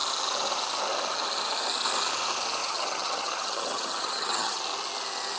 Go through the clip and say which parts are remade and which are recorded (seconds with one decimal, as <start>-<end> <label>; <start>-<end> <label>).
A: 0.0-2.6 recorded; 2.6-4.6 remade; 4.6-5.4 recorded